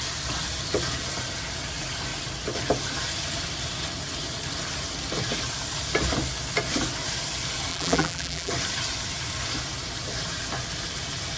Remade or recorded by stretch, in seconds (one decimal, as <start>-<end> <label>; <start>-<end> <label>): 0.0-7.7 recorded; 7.7-8.5 remade; 8.5-11.4 recorded